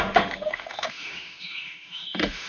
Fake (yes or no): yes